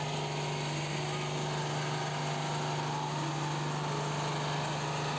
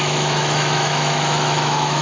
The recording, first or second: first